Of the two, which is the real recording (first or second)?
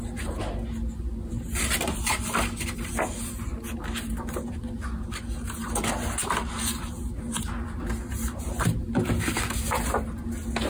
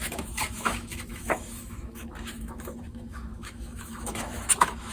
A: first